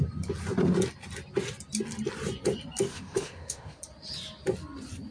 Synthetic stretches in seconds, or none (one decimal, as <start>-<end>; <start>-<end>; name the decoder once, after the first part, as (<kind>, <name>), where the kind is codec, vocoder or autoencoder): 2.9-3.8 (autoencoder, DAC-VAE)